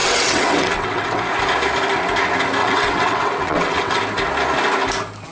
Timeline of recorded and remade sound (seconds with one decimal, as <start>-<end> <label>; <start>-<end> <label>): 0.0-1.2 remade; 1.2-2.6 recorded; 2.6-4.0 remade; 4.0-5.3 recorded